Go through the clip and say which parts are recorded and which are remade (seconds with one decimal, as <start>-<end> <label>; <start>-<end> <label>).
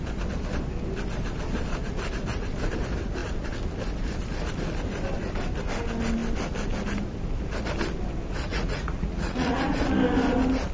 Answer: 0.0-8.5 recorded; 8.5-9.6 remade; 9.6-10.7 recorded